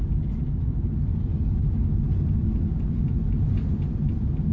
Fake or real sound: real